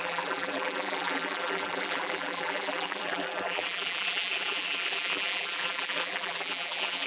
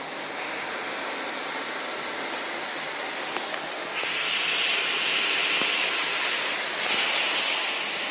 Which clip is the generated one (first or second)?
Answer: first